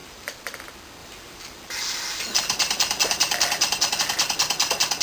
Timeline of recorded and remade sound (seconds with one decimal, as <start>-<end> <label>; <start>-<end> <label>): 0.0-0.6 remade; 0.6-1.0 recorded; 1.0-4.0 remade; 4.0-5.0 recorded